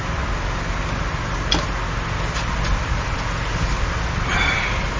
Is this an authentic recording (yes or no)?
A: yes